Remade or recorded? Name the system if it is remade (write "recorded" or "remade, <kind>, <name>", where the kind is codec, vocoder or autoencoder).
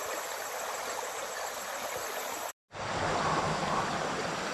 recorded